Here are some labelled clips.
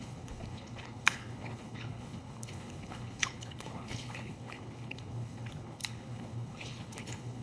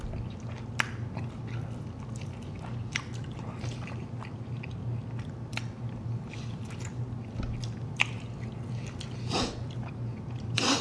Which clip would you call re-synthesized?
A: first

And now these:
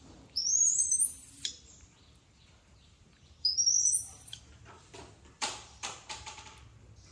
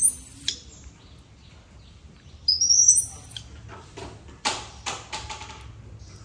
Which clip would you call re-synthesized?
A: first